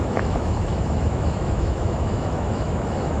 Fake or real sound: fake